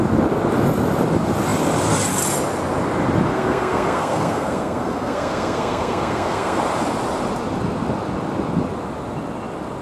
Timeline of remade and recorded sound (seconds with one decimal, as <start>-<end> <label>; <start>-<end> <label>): 0.0-3.3 recorded; 3.3-6.6 remade; 6.6-9.8 recorded